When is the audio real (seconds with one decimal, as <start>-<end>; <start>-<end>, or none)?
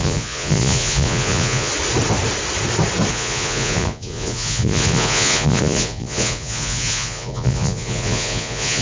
1.7-3.1